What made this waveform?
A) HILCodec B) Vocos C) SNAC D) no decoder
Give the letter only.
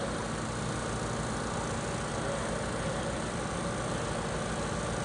D